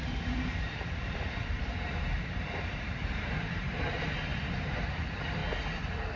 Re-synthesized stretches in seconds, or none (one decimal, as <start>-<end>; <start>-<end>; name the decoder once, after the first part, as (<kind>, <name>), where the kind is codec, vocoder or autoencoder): 0.0-5.4 (vocoder, BigVGAN v2)